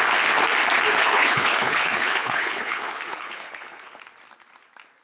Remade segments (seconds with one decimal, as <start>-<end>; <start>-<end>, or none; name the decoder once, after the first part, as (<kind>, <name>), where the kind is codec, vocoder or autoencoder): 1.0-4.0 (codec, HILCodec)